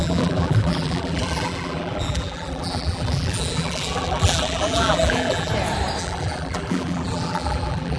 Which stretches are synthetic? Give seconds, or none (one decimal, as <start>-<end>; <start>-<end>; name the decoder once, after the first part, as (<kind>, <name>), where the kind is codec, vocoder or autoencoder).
0.0-5.5 (vocoder, BigVGAN v2); 6.0-8.0